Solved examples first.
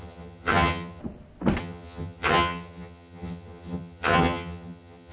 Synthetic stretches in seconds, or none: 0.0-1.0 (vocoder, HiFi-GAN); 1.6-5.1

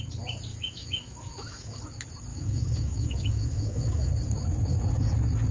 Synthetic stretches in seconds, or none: 0.5-1.8 (autoencoder, DAC-VAE); 2.3-4.1

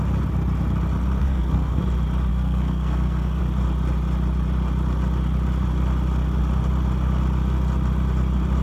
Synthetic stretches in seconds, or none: 1.2-1.8 (codec, SNAC); 2.3-3.4

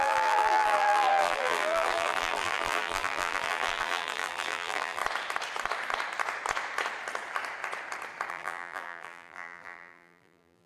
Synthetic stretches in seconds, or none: 0.0-5.0 (vocoder, BigVGAN v2); 8.3-10.7